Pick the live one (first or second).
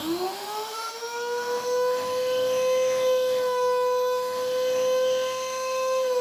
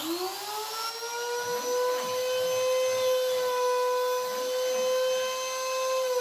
second